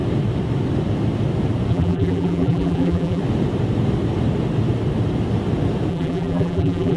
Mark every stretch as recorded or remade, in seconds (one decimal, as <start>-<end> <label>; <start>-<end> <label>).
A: 0.0-1.7 recorded; 1.7-3.2 remade; 3.2-5.9 recorded; 5.9-7.0 remade